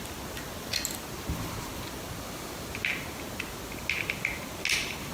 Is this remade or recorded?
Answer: recorded